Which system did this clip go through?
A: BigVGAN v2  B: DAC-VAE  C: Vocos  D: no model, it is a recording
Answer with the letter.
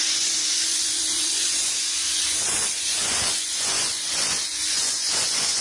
C